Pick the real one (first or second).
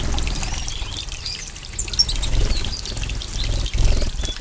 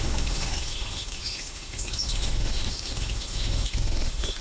first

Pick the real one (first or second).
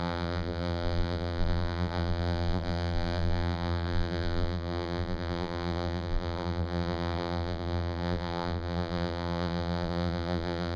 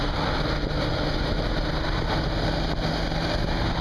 second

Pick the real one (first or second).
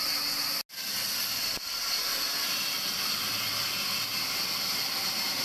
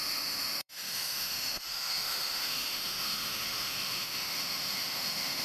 first